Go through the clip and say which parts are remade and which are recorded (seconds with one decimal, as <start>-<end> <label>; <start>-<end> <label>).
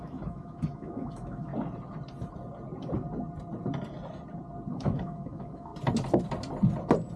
0.0-1.5 remade; 1.5-4.7 recorded; 4.7-5.7 remade; 5.7-7.2 recorded